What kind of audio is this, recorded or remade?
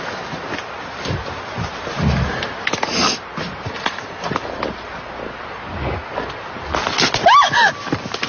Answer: recorded